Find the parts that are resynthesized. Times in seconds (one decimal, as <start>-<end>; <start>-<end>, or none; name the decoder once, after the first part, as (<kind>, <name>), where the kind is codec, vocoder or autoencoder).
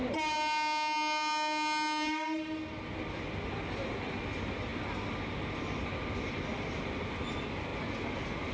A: none